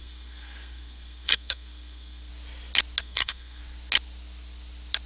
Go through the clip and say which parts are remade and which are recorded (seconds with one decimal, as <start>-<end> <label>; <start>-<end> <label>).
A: 0.0-2.3 remade; 2.3-3.0 recorded; 3.0-3.6 remade; 3.6-5.1 recorded